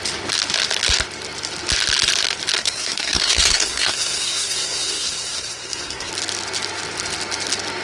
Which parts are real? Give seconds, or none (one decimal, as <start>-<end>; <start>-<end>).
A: 0.0-2.6; 6.1-7.8

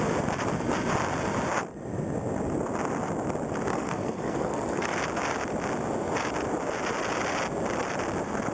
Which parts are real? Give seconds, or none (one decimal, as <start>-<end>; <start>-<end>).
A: 0.0-3.7; 5.0-8.5

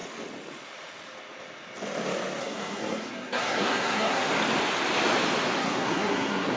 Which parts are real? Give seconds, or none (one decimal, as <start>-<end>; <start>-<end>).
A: 0.0-2.4; 4.3-5.6

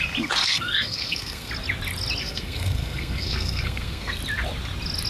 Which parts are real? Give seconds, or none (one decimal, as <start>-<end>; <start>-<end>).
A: 0.0-0.4; 1.5-2.2; 4.2-5.1

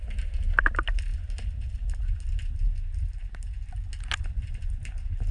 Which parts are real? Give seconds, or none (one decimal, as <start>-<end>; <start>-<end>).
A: 0.0-5.3

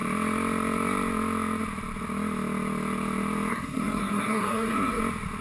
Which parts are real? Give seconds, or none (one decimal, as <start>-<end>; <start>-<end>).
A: 0.0-3.5; 5.0-5.4